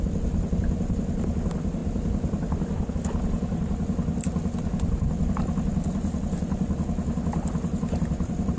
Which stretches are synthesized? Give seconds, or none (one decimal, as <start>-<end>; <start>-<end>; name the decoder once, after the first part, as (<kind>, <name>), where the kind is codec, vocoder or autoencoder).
none